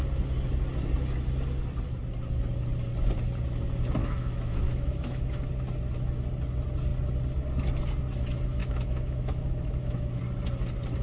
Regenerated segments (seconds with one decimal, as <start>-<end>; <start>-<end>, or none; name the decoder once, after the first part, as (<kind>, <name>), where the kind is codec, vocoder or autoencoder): 4.0-5.5 (autoencoder, DAC-VAE); 8.6-10.2

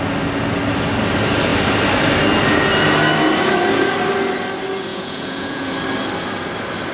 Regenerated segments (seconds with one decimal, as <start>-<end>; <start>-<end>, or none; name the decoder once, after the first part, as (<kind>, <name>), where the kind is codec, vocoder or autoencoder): 4.9-5.7 (vocoder, Vocos)

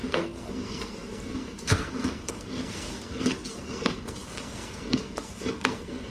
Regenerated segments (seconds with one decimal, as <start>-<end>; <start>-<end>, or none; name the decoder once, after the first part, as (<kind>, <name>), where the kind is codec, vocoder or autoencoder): 0.0-6.1 (codec, SNAC)

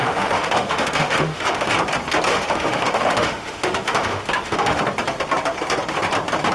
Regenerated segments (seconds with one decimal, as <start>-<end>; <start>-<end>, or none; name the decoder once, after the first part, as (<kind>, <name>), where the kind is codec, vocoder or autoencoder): 0.0-1.7 (autoencoder, DAC-VAE); 2.3-4.8

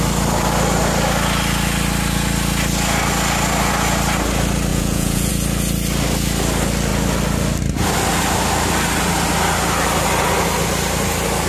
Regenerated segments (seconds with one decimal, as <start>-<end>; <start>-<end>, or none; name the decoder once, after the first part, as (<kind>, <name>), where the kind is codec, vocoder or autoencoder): 4.7-5.3 (vocoder, Vocos)